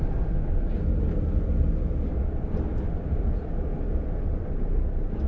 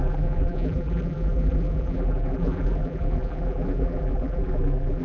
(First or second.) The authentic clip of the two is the first